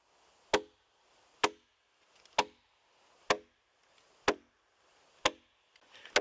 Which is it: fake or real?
real